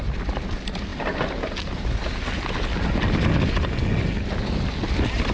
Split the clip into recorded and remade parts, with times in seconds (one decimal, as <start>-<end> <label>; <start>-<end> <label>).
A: 0.0-5.3 recorded